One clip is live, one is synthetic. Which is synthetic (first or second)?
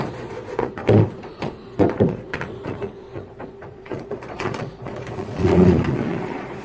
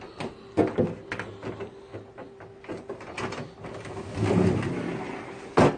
first